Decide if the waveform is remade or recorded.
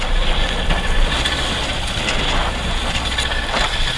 recorded